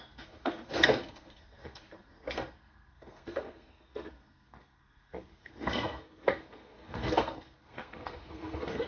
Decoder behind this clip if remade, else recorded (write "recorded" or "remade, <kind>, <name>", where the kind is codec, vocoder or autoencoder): remade, codec, SNAC